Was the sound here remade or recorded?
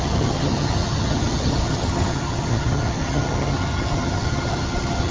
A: remade